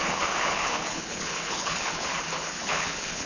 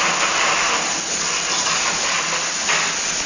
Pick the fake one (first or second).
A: first